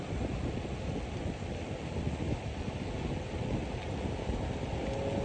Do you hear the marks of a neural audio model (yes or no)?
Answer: no